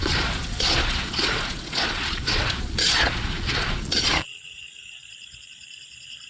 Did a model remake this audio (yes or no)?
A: yes